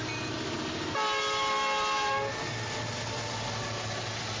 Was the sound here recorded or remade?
recorded